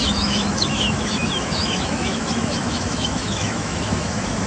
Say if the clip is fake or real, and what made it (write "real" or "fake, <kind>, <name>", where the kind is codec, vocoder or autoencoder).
fake, autoencoder, DAC-VAE